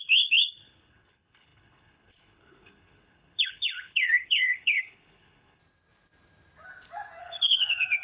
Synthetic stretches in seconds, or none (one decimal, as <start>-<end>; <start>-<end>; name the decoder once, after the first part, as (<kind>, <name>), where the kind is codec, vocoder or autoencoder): 0.0-5.6 (codec, HILCodec); 7.2-8.0